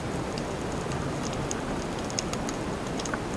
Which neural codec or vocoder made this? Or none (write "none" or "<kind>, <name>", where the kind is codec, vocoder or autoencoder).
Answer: none